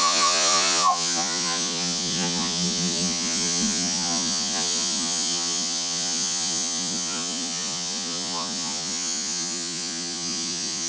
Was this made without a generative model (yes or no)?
no